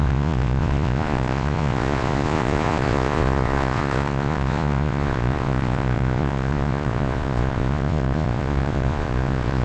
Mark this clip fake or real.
fake